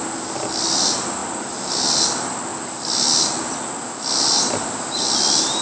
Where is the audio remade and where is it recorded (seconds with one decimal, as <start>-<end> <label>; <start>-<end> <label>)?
0.0-5.6 recorded